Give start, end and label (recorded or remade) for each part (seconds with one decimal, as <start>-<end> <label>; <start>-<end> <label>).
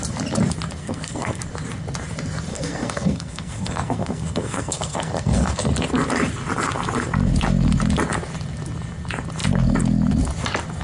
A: 0.0-0.8 recorded; 0.8-1.4 remade; 1.4-2.5 recorded; 2.5-5.7 remade; 5.7-10.8 recorded